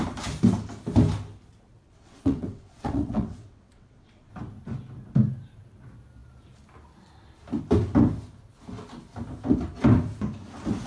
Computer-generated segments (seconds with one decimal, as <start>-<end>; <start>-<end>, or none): 1.8-4.3